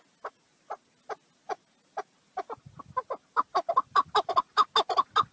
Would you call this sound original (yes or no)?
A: yes